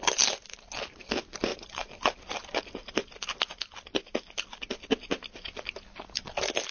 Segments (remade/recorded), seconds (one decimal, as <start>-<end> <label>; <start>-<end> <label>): 0.0-1.5 recorded; 1.5-2.4 remade; 2.4-6.7 recorded

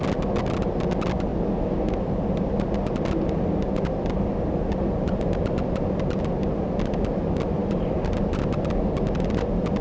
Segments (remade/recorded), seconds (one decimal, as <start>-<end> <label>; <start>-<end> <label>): 0.0-9.8 recorded